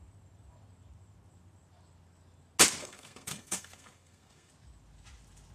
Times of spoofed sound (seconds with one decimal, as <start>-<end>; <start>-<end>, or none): 2.8-4.5